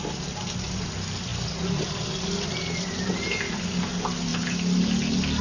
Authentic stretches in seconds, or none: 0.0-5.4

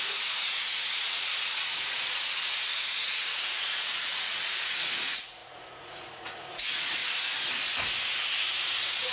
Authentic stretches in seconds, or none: 7.0-8.5